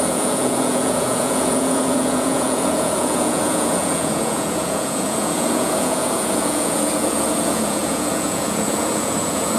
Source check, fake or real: fake